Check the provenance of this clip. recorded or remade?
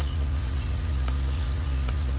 remade